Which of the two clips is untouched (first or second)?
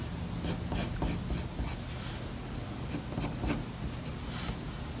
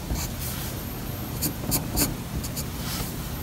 first